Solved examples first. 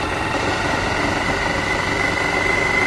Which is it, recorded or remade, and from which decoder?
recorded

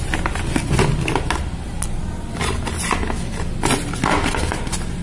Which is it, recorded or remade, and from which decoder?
recorded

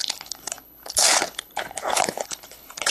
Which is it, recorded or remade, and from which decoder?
remade, codec, HILCodec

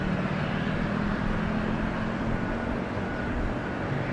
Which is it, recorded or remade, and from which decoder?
recorded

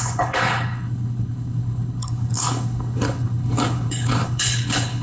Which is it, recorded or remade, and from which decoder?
remade, codec, HILCodec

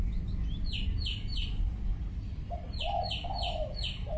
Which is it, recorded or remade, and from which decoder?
recorded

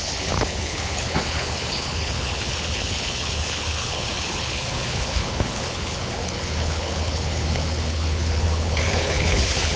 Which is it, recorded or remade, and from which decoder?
remade, codec, HILCodec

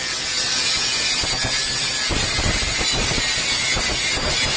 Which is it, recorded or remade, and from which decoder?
recorded